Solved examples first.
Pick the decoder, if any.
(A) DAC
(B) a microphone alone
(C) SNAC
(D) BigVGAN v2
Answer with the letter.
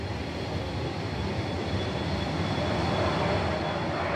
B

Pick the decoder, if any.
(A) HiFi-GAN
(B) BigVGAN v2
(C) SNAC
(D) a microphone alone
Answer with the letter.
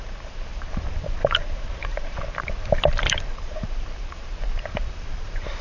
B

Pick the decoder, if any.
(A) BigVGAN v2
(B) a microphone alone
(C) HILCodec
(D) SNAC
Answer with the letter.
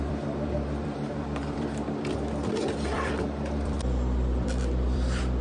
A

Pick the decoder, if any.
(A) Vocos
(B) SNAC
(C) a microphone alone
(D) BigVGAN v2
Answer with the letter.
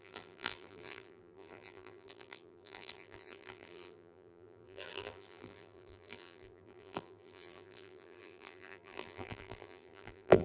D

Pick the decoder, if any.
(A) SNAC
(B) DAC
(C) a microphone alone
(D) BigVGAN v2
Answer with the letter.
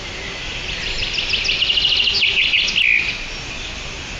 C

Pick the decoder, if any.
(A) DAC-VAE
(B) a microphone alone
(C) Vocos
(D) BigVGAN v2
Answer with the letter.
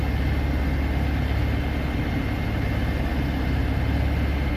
B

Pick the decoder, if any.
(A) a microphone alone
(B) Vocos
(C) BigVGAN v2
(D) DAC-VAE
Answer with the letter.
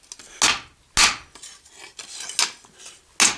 A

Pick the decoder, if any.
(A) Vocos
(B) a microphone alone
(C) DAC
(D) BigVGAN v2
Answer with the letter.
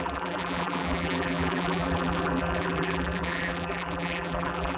D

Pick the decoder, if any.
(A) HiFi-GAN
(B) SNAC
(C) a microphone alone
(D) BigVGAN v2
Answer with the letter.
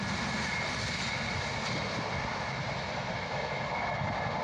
C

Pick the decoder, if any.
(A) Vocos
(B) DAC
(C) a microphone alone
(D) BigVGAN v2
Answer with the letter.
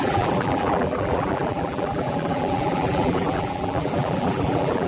D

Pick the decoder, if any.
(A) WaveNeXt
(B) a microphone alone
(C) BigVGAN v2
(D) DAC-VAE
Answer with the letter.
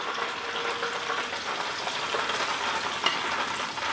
B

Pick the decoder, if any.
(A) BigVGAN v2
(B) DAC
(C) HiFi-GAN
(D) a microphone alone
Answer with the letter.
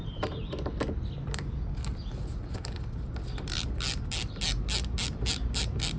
D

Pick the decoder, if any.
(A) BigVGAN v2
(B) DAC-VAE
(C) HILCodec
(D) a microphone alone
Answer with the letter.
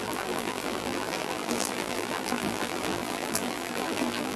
A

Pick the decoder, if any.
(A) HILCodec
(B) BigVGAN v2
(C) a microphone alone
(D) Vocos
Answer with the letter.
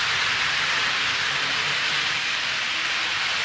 C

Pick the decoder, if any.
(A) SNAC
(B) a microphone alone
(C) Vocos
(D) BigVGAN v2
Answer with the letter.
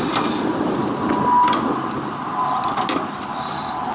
B